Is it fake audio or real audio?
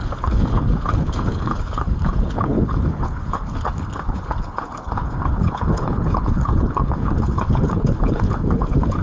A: fake